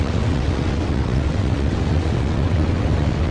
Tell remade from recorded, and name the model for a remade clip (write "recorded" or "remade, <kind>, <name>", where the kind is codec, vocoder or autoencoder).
remade, vocoder, WaveNeXt